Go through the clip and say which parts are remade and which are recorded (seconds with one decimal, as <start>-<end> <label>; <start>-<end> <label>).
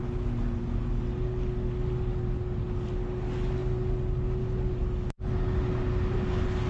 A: 0.0-6.7 recorded